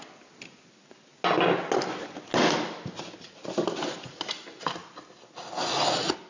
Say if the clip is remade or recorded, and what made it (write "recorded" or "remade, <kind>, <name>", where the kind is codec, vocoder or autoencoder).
recorded